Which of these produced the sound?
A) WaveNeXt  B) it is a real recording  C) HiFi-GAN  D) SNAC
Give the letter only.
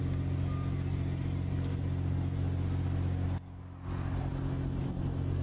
B